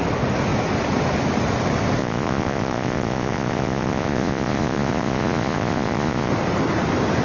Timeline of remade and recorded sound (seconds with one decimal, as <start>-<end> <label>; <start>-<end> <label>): 0.0-2.0 recorded; 2.0-6.3 remade; 6.3-7.2 recorded